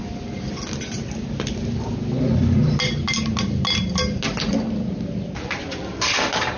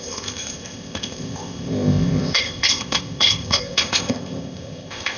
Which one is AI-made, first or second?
second